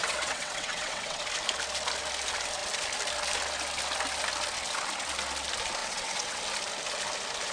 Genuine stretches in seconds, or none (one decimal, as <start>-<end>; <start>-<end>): 1.2-5.8; 6.4-7.5